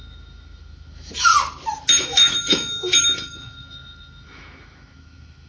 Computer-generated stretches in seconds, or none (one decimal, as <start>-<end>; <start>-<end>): 0.0-1.3; 2.0-5.5